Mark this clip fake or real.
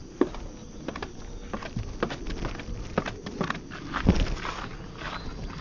real